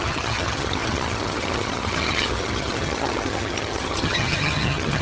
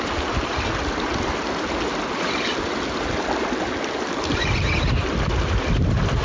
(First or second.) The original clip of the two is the second